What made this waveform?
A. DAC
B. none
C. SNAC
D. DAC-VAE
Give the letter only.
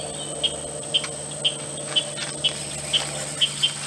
B